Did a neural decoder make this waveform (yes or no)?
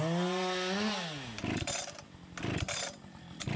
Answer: no